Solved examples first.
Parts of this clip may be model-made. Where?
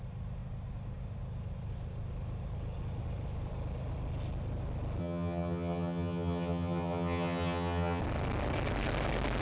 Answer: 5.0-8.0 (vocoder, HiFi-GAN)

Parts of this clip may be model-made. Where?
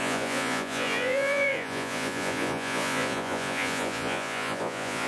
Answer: 0.0-5.1 (vocoder, Vocos)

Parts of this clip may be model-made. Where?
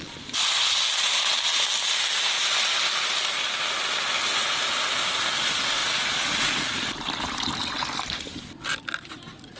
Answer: none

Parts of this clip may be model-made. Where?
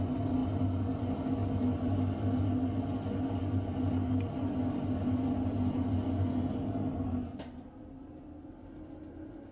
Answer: none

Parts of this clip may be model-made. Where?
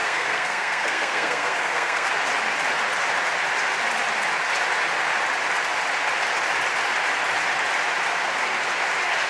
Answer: 0.0-2.1 (codec, SNAC)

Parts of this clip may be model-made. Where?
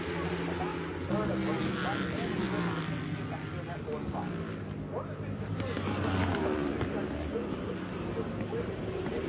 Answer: 0.0-0.7 (vocoder, BigVGAN v2); 5.2-9.3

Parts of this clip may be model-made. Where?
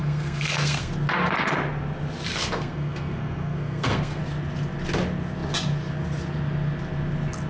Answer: 0.0-0.9 (codec, SNAC); 2.3-4.2